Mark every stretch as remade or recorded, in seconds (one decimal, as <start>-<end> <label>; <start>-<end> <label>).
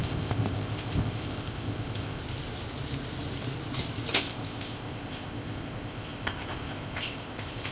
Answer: 0.0-2.2 remade; 2.2-4.1 recorded; 4.1-7.7 remade